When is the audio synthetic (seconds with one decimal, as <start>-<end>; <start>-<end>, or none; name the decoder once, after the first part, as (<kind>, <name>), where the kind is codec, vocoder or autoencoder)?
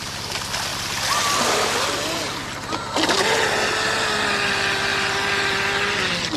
none